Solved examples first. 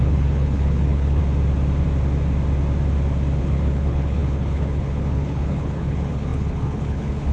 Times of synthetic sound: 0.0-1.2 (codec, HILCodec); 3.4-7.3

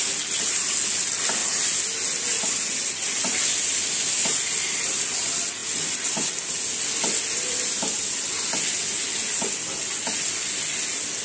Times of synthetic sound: 5.6-6.3 (vocoder, BigVGAN v2)

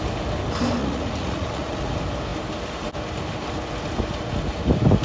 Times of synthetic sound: 0.8-1.9 (vocoder, Vocos)

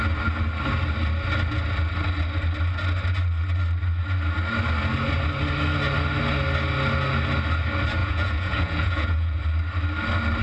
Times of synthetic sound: 8.0-9.4 (vocoder, Vocos)

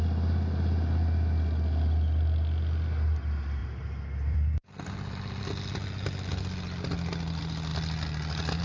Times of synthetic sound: 3.6-5.4 (vocoder, BigVGAN v2)

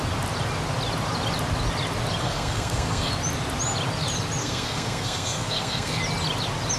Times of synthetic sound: 2.2-3.1 (codec, SNAC); 4.4-6.0

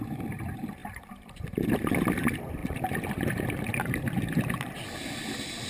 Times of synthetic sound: 0.8-1.7 (vocoder, BigVGAN v2); 2.6-4.8